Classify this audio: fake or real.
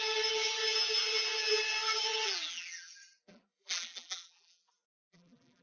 fake